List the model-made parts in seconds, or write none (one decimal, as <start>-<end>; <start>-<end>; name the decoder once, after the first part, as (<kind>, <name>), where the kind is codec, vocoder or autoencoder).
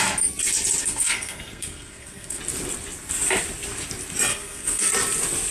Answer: 0.8-2.4 (codec, SNAC); 4.3-4.9